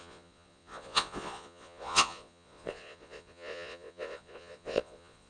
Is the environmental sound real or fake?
fake